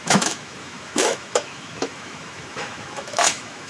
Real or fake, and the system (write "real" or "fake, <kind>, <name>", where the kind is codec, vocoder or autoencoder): fake, autoencoder, DAC-VAE